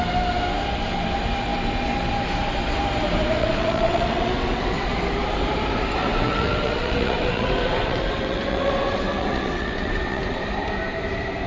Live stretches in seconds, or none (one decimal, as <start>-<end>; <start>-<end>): 0.0-3.4; 4.9-6.0; 10.2-11.5